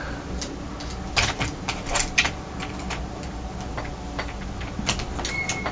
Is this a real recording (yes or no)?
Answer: yes